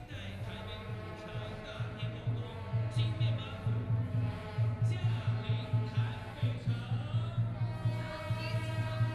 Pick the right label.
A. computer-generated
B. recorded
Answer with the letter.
B